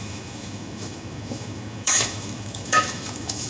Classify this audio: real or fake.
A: fake